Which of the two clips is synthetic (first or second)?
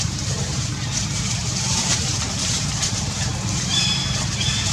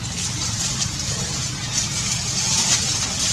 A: first